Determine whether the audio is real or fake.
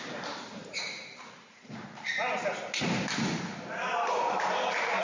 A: fake